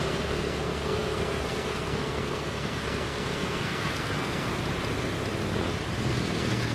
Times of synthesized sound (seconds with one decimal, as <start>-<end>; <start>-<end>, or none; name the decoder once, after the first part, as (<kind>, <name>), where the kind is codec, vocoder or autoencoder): 0.0-4.5 (codec, SNAC); 6.1-6.7